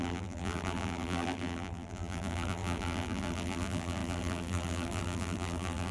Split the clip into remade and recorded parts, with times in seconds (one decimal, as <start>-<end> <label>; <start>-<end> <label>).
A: 0.0-5.9 remade